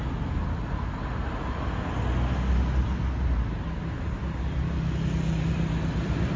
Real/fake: real